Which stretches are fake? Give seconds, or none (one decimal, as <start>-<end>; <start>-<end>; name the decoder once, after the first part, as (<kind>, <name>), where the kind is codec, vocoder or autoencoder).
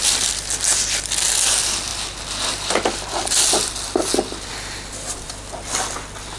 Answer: none